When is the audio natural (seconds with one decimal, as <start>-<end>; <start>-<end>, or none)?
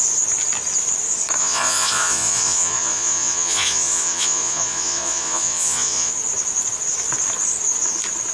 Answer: 0.0-1.4; 6.1-8.3